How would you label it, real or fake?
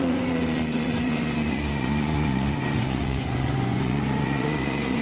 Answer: fake